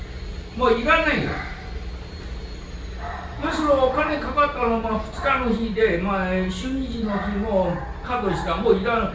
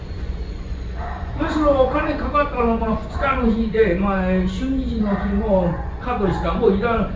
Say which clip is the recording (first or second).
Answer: first